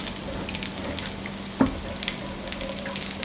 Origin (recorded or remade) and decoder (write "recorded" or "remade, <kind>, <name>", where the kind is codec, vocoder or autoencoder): recorded